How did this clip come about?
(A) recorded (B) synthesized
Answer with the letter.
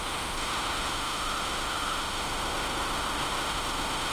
B